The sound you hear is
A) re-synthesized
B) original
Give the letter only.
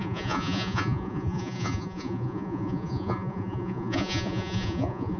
A